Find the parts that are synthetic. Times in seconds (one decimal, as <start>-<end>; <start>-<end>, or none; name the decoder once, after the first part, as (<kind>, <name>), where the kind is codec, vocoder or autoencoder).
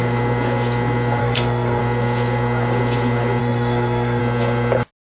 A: 1.2-1.8 (codec, SNAC); 3.4-4.2